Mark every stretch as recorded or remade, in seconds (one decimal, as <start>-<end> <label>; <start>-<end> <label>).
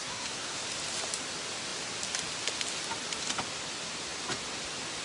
0.0-0.6 remade; 0.6-5.0 recorded